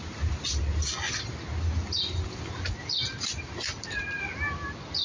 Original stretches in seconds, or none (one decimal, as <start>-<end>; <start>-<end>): 0.0-5.0